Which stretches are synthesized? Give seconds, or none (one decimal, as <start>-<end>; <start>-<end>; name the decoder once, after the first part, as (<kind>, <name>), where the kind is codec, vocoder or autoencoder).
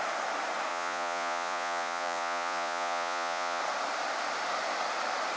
0.7-3.6 (vocoder, Vocos)